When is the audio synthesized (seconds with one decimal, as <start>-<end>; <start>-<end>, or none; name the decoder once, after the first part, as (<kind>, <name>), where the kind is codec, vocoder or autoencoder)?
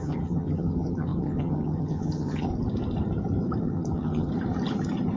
0.0-2.5 (vocoder, HiFi-GAN); 3.6-4.3